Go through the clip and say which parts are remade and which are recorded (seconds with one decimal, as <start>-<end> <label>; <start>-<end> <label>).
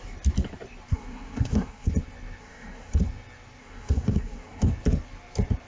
0.0-0.9 recorded; 0.9-1.9 remade; 1.9-2.4 recorded; 2.4-3.0 remade; 3.0-3.6 recorded; 3.6-4.7 remade; 4.7-5.7 recorded